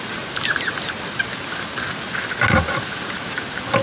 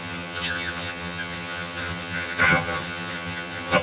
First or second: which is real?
first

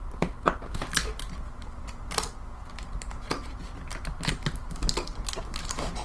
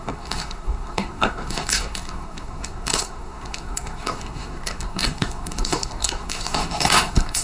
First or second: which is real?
first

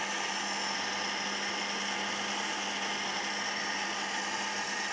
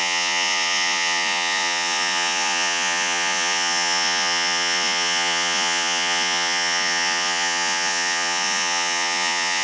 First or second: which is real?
first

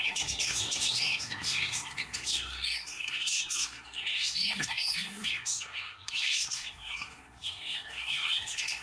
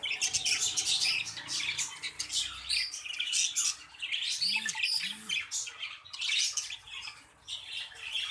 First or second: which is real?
second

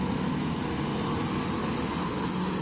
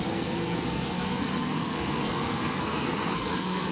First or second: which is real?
first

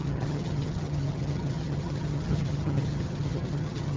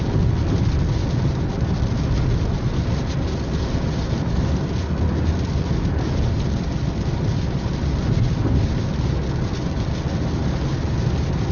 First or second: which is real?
second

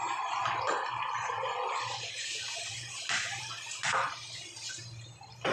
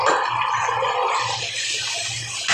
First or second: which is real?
second